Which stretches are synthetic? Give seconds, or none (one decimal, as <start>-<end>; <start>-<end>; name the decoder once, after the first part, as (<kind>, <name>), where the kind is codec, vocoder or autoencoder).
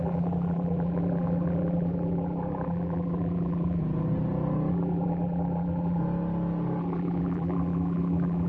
0.0-3.8 (vocoder, BigVGAN v2); 4.7-6.0; 6.8-8.5